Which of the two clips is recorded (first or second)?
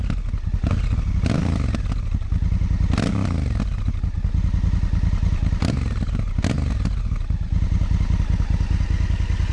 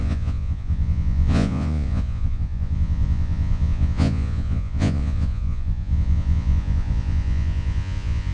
first